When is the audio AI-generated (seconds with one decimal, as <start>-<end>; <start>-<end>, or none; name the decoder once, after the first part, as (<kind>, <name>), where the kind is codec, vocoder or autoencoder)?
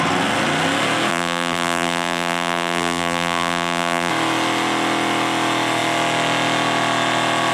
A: 1.1-4.1 (vocoder, BigVGAN v2)